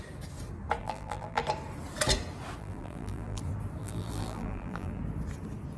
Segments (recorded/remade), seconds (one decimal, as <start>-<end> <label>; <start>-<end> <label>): 0.0-0.8 recorded; 0.8-1.4 remade; 1.4-2.6 recorded; 2.6-3.4 remade; 3.4-3.8 recorded; 3.8-5.0 remade; 5.0-5.8 recorded